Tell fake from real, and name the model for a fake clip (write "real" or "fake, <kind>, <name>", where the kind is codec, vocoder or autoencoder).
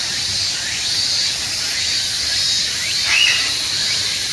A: real